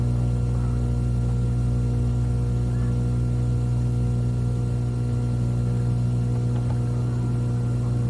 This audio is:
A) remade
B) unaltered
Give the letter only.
B